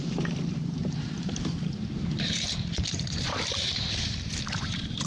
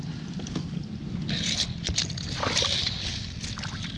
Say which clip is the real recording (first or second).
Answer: second